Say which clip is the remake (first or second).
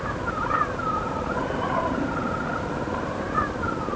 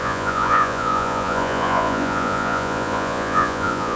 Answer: second